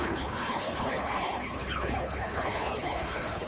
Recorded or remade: remade